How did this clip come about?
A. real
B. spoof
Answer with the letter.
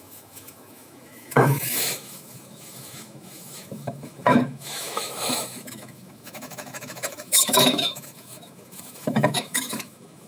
B